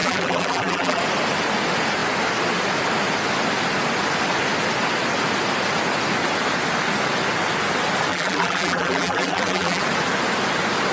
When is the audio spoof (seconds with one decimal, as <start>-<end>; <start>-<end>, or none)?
0.0-1.0; 8.1-9.8